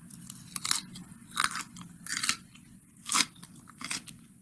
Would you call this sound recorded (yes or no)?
yes